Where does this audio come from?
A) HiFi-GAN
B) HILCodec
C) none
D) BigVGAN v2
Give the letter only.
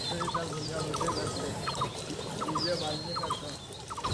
C